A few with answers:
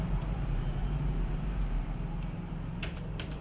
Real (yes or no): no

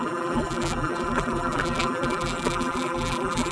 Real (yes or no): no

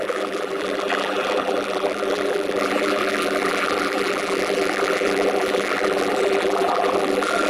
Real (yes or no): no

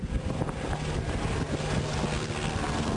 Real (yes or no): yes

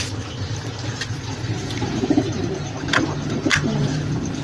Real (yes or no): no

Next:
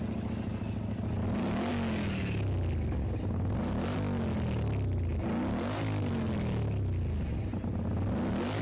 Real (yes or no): yes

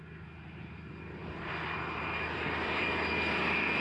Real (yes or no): yes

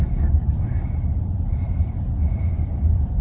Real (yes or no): no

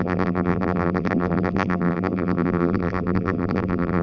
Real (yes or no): no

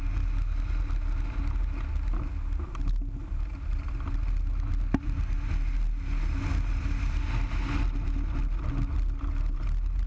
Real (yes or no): yes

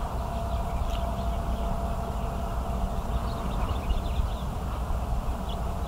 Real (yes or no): yes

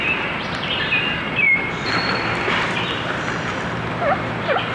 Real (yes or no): no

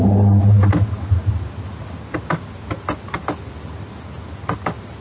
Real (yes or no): yes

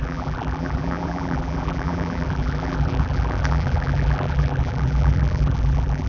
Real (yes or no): no